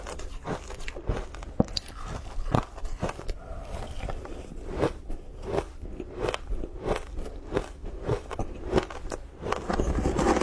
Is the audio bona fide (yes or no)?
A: yes